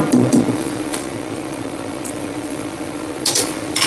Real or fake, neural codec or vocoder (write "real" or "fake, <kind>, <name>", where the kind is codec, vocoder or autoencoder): fake, vocoder, Vocos